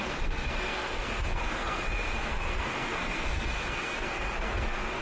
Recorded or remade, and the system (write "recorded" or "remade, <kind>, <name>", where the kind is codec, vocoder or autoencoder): remade, codec, SNAC